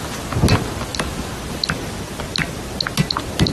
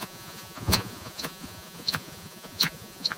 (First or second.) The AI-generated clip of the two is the second